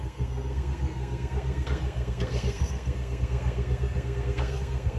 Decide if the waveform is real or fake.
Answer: fake